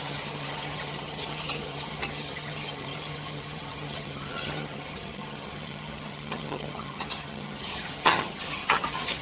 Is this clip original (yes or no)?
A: no